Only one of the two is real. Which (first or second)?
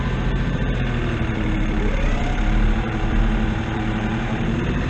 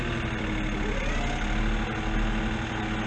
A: second